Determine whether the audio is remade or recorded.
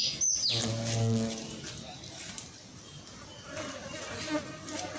recorded